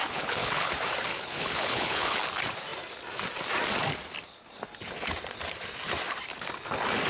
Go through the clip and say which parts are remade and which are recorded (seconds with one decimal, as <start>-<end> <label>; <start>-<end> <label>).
0.0-0.7 remade; 0.7-1.1 recorded; 1.1-2.2 remade; 2.2-7.1 recorded

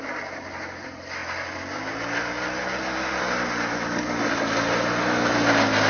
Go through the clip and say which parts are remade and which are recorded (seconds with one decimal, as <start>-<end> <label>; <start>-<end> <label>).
0.0-5.9 recorded